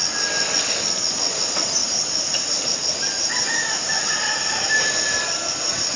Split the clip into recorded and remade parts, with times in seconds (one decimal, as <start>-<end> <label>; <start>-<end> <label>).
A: 0.0-6.0 recorded